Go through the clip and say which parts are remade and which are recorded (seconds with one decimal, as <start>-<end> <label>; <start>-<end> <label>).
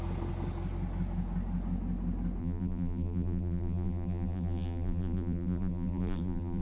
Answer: 0.0-2.4 recorded; 2.4-6.6 remade